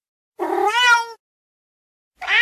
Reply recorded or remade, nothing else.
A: recorded